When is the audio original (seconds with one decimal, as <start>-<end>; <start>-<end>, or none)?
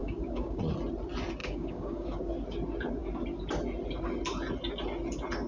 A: 0.6-1.4; 2.2-5.5